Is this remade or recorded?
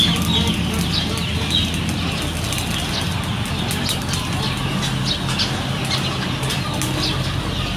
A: recorded